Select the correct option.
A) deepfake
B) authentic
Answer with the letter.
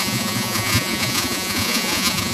A